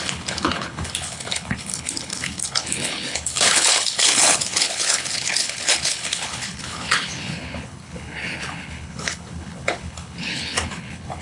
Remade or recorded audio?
remade